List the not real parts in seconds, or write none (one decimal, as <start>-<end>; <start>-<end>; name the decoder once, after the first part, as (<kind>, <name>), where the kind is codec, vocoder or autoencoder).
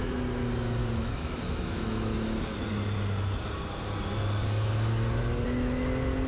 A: 0.8-2.7 (autoencoder, DAC-VAE)